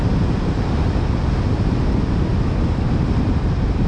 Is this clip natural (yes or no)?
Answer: yes